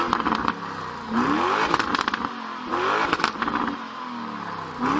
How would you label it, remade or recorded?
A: recorded